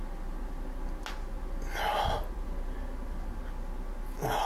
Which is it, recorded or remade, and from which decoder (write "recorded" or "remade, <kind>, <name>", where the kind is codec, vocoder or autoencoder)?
recorded